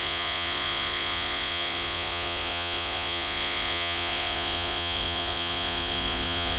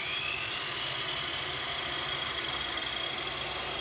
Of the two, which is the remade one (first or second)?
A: first